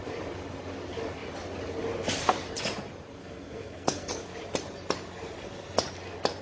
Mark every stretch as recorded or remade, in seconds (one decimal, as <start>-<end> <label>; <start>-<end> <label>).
0.0-3.2 recorded; 3.2-4.1 remade; 4.1-6.4 recorded